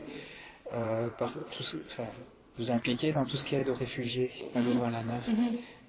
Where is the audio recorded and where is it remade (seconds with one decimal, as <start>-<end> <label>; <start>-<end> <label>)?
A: 0.0-3.6 remade; 3.6-4.1 recorded; 4.1-5.9 remade